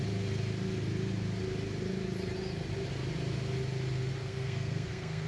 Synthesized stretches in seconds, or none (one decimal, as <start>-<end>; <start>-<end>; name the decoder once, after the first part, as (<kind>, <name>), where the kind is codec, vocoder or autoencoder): 4.2-5.3 (codec, SNAC)